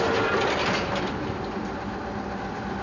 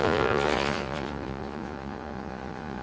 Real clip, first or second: first